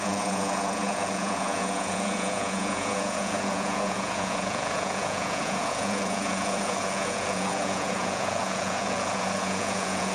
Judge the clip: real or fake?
fake